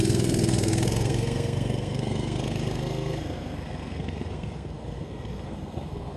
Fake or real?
fake